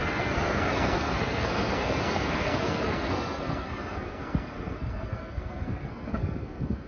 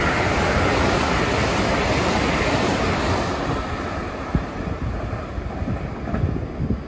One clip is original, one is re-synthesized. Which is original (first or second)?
second